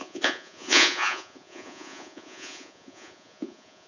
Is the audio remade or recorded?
remade